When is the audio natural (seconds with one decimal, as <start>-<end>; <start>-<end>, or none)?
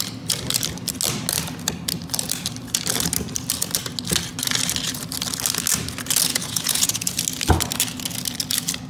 0.0-6.3; 7.1-8.9